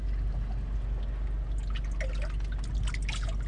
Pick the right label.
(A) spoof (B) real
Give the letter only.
B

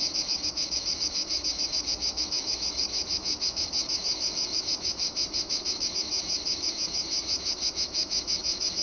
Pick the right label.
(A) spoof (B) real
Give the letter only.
A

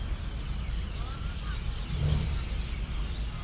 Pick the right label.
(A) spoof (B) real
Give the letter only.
B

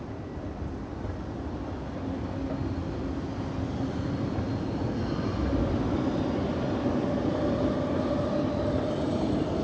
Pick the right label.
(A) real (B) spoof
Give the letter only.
A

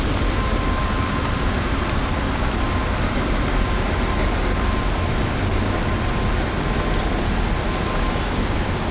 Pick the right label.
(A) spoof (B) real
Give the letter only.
B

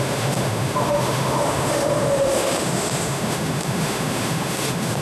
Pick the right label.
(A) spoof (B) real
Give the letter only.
A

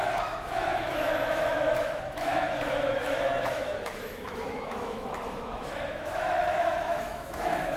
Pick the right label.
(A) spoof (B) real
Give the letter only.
A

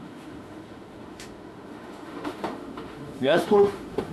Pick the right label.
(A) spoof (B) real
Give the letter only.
A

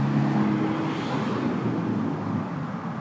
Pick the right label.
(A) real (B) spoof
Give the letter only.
A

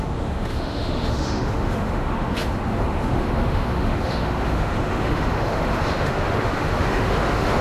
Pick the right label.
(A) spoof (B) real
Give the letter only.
A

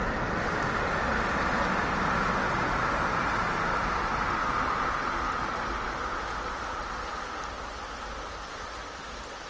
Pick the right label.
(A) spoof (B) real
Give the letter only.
B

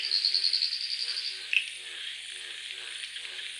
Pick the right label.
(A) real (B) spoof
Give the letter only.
A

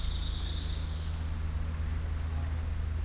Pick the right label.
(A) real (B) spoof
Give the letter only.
A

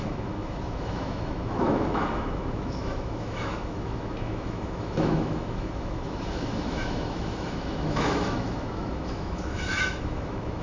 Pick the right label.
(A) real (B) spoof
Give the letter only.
B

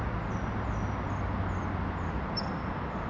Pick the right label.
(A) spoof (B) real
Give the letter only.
B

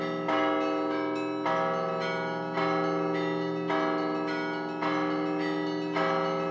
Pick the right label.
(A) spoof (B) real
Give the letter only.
B